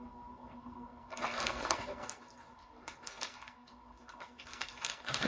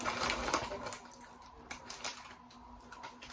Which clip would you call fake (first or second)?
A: first